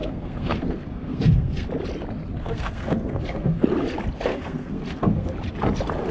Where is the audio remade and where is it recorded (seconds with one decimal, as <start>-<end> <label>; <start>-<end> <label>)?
0.0-1.7 remade; 1.7-2.4 recorded; 2.4-3.6 remade; 3.6-4.3 recorded; 4.3-5.3 remade; 5.3-6.1 recorded